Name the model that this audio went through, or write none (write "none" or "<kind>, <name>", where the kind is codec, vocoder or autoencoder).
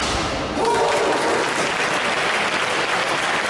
none